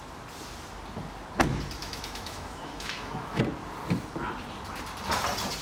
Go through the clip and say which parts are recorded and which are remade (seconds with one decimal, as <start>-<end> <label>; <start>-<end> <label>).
0.0-1.8 recorded; 1.8-3.4 remade; 3.4-5.6 recorded